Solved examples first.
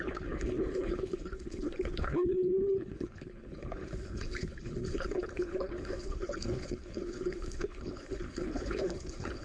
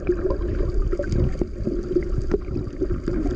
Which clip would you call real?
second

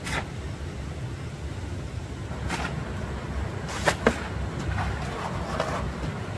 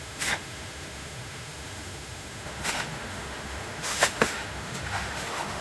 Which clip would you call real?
first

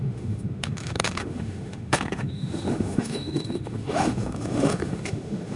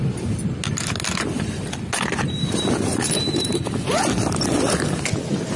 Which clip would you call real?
second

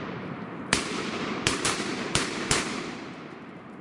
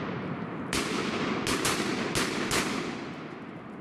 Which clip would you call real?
second